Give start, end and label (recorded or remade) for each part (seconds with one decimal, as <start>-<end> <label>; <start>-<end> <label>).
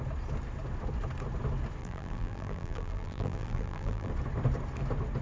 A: 0.0-1.8 recorded; 1.8-4.1 remade; 4.1-5.2 recorded